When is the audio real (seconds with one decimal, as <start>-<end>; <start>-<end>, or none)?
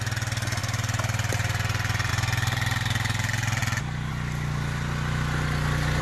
0.0-6.0